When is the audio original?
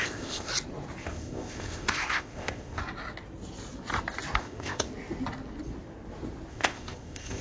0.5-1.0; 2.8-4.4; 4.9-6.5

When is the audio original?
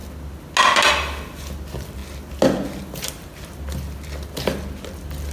0.0-5.3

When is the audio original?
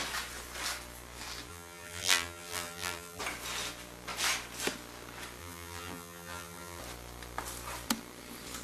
0.0-1.5; 3.2-5.4; 6.8-8.6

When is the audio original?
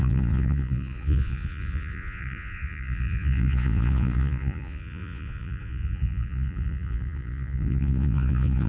none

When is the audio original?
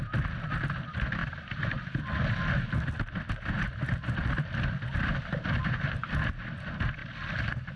0.0-1.2; 2.0-7.8